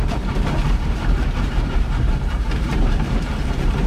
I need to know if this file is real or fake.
fake